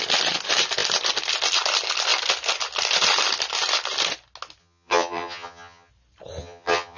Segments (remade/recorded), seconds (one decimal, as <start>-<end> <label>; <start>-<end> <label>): 0.0-4.6 recorded; 4.6-5.9 remade; 5.9-6.4 recorded; 6.4-7.0 remade